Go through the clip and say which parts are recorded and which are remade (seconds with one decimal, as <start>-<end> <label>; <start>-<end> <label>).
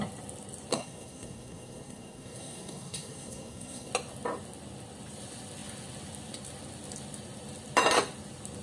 0.0-0.7 recorded; 0.7-3.9 remade; 3.9-8.6 recorded